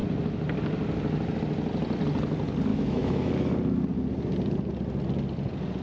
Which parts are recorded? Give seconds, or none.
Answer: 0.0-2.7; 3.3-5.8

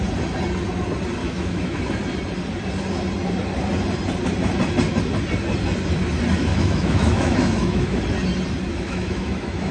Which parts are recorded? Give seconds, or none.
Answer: 0.0-1.2; 1.8-6.5; 8.0-8.7

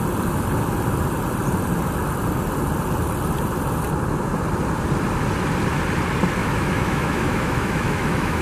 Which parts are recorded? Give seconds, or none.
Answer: 0.0-6.4

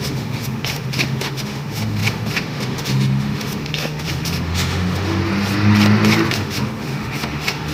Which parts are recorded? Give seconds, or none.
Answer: 5.2-6.3

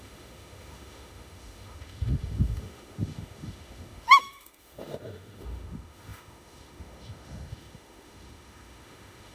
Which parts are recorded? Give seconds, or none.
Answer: none

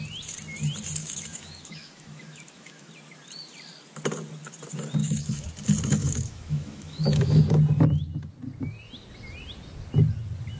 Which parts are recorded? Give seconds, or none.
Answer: 0.0-1.0; 2.9-5.0; 5.5-6.0; 7.4-10.6

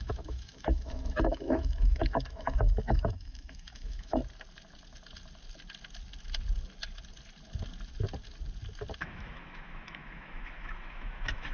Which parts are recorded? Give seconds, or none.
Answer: 4.2-9.0